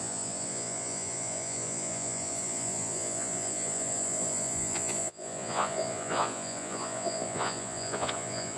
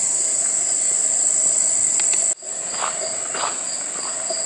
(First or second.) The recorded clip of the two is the second